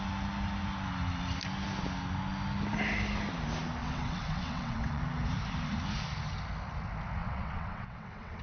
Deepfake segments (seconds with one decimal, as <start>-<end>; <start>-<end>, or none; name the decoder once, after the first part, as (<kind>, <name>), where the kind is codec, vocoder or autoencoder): 3.8-5.0 (vocoder, WaveNeXt); 7.2-8.4